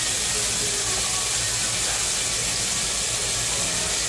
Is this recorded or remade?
recorded